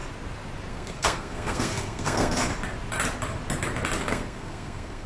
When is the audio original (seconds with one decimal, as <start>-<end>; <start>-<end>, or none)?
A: 0.0-0.7; 2.5-4.0